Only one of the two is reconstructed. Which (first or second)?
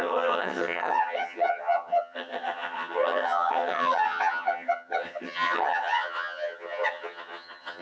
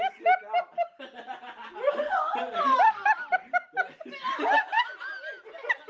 first